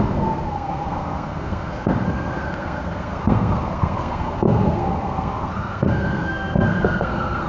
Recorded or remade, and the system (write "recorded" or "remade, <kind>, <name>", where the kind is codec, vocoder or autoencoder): remade, codec, SNAC